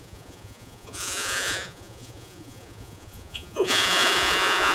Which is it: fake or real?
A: fake